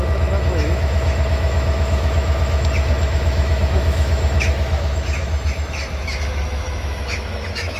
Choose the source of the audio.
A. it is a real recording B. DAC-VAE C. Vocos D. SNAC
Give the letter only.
B